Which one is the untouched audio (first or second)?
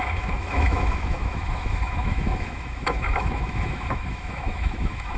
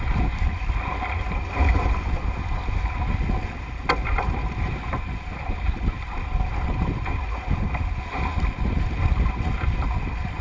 second